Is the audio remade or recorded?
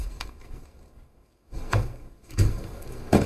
remade